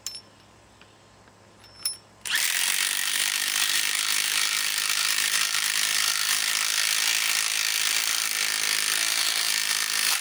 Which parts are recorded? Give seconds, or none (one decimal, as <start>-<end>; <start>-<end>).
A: 0.0-3.0; 6.5-9.0